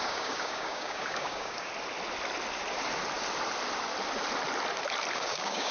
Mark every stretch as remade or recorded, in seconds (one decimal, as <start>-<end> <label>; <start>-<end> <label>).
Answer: 0.0-1.7 remade; 1.7-5.1 recorded; 5.1-5.7 remade